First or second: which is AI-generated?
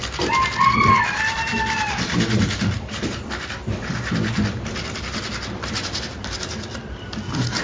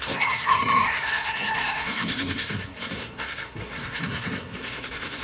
second